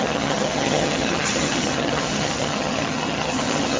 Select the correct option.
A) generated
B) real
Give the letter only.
A